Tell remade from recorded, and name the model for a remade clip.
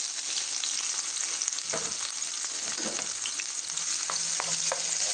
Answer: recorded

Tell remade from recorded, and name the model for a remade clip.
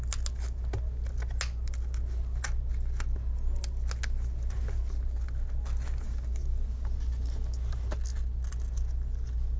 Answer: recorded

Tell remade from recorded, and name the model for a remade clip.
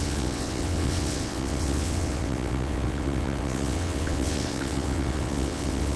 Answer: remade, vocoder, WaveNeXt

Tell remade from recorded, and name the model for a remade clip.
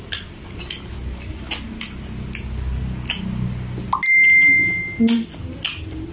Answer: recorded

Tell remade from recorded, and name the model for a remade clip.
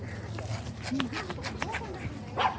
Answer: recorded